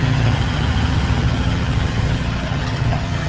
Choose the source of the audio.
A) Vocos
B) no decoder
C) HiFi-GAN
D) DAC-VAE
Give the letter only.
C